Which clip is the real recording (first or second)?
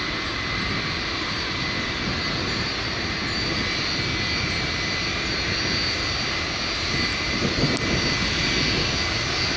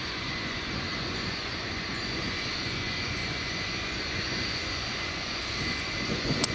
first